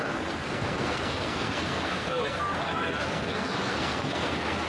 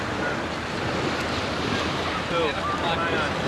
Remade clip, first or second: first